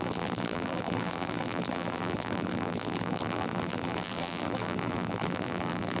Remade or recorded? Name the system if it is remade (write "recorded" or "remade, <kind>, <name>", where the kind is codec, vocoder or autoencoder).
remade, vocoder, BigVGAN v2